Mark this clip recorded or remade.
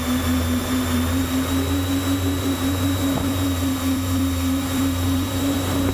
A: remade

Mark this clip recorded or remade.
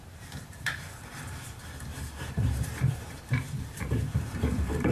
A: remade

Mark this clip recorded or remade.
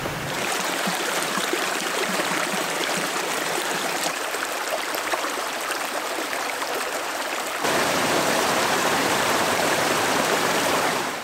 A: remade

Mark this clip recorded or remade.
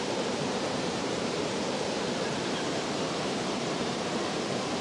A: remade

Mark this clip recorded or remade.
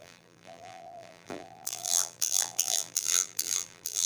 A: remade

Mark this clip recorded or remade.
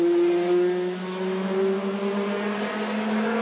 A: recorded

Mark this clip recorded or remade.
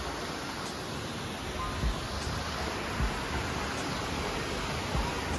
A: recorded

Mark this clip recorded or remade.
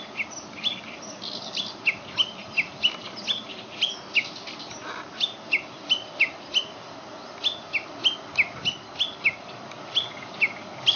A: recorded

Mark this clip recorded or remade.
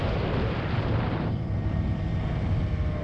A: remade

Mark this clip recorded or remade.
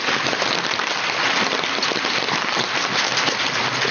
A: recorded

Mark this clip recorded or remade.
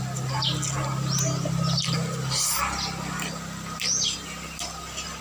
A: recorded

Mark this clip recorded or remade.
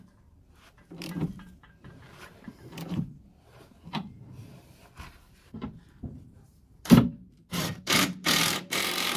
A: remade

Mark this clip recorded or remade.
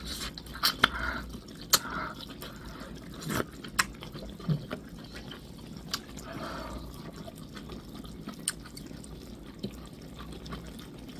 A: recorded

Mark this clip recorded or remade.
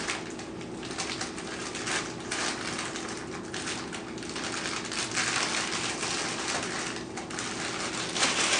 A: recorded